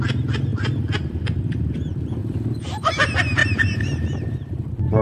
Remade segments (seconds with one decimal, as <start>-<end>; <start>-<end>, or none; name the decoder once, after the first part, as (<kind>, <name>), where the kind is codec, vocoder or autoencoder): 2.2-2.9 (vocoder, BigVGAN v2); 3.4-5.0